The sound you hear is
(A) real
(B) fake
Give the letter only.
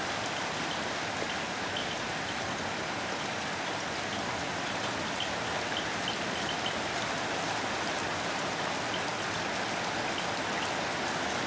A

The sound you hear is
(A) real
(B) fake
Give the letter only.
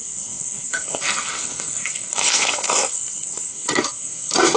B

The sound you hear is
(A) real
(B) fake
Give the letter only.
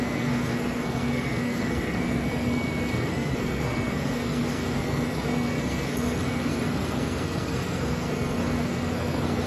B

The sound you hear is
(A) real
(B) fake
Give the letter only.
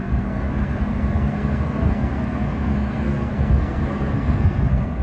B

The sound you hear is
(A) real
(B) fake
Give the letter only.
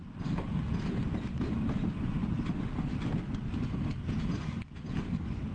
A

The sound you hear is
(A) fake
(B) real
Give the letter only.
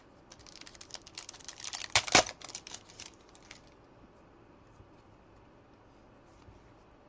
B